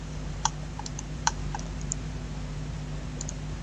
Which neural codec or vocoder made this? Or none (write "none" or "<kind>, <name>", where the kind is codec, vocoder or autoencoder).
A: vocoder, BigVGAN v2